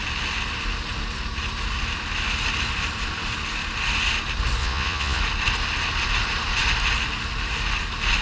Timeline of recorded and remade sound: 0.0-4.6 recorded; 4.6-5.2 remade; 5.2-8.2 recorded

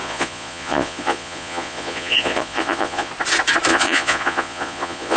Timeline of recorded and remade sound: 0.0-3.1 remade; 3.1-3.7 recorded; 3.7-5.2 remade

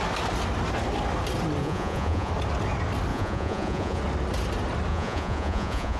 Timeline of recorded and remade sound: 0.0-1.6 recorded; 1.6-2.3 remade; 2.3-3.1 recorded; 3.1-4.0 remade; 4.0-4.9 recorded; 4.9-6.0 remade